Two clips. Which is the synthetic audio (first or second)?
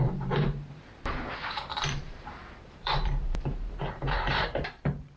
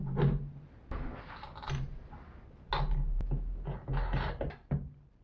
first